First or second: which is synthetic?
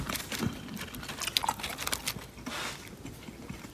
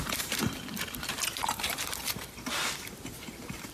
second